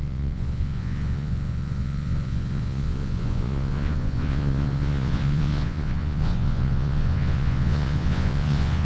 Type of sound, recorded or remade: remade